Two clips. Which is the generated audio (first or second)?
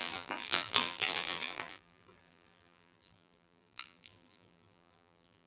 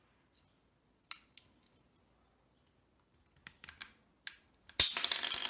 first